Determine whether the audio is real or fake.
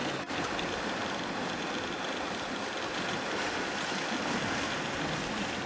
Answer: real